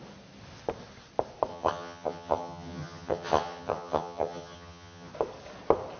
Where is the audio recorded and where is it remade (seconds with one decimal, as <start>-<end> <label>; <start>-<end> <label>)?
0.0-1.5 recorded; 1.5-5.1 remade; 5.1-6.0 recorded